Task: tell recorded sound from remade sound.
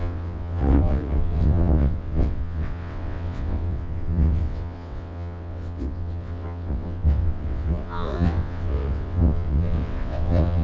remade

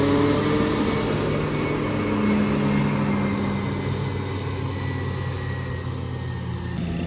recorded